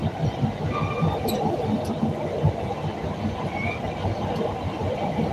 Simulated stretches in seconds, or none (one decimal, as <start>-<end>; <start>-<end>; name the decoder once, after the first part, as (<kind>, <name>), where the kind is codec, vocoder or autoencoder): none